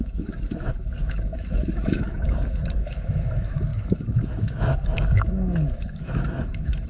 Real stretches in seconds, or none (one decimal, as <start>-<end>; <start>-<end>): none